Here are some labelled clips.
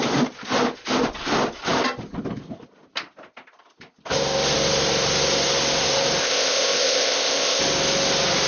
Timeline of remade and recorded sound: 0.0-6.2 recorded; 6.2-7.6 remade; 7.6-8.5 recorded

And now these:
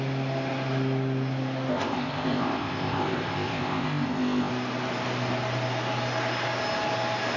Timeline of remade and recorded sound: 0.0-1.7 recorded; 1.7-4.5 remade; 4.5-7.4 recorded

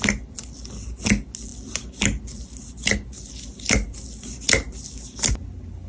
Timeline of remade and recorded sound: 0.0-5.9 recorded

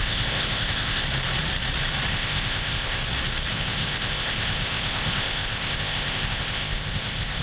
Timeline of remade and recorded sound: 0.0-1.0 remade; 1.0-2.1 recorded; 2.1-3.0 remade; 3.0-3.5 recorded; 3.5-7.4 remade

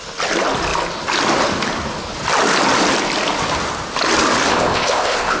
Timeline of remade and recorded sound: 0.0-4.5 recorded; 4.5-5.4 remade

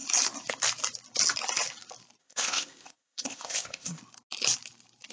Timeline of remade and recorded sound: 0.0-2.2 recorded; 2.2-4.0 remade; 4.0-5.1 recorded